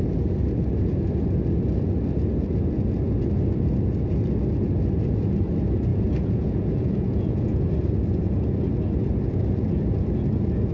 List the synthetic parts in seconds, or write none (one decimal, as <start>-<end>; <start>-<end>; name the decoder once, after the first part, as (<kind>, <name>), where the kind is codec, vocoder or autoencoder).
5.9-7.6 (vocoder, Vocos)